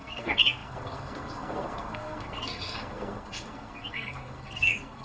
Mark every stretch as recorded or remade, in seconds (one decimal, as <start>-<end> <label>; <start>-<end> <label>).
0.0-5.0 remade